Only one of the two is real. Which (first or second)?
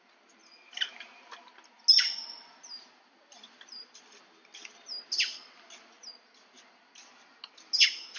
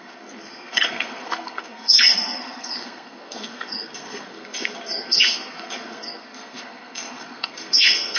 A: first